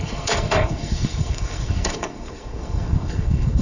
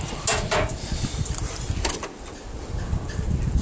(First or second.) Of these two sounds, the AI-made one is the first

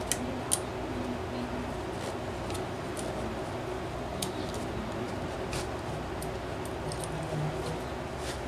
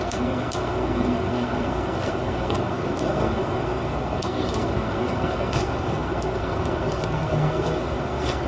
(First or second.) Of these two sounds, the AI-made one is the second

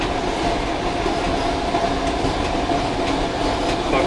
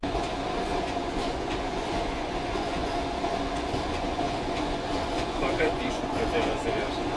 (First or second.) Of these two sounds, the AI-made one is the second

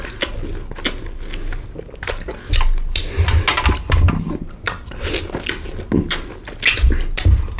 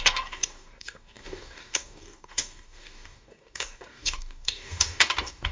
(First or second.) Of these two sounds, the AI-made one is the second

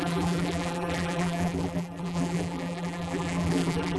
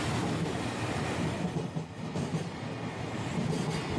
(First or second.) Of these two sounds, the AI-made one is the first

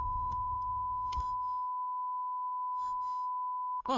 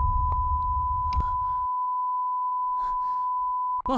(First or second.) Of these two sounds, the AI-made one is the first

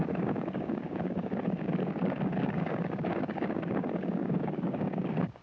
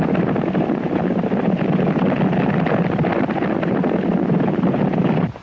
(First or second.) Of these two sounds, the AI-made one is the first